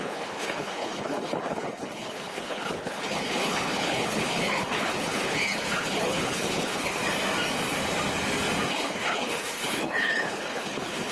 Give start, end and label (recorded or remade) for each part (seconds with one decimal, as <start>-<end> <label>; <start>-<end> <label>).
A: 0.0-7.0 remade; 7.0-8.7 recorded; 8.7-11.1 remade